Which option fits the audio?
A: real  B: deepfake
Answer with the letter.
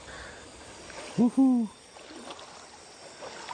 A